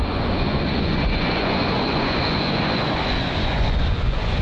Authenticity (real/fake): fake